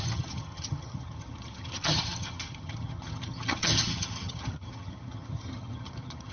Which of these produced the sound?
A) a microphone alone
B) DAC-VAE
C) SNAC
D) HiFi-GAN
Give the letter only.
D